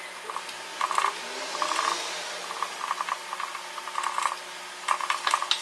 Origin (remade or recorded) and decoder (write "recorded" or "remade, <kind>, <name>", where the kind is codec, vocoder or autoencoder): recorded